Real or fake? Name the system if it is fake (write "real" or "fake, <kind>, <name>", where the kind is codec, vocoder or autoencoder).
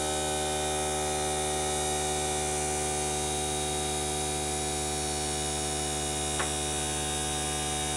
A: real